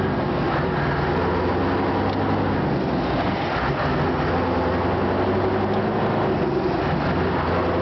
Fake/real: real